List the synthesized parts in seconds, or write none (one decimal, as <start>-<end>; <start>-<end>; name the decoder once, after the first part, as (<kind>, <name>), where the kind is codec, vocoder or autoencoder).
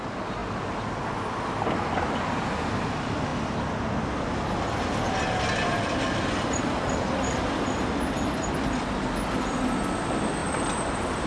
10.4-11.3 (vocoder, BigVGAN v2)